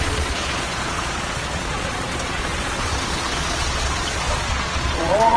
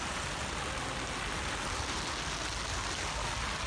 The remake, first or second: first